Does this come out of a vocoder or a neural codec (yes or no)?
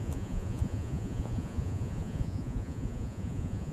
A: yes